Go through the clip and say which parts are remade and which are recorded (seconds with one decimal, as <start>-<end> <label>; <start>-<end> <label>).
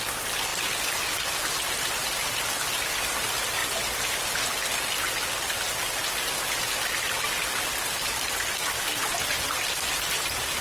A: 0.0-10.6 recorded